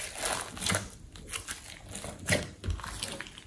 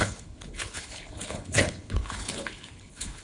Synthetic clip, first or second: second